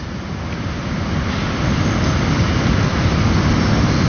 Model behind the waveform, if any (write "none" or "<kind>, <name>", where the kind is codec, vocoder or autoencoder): none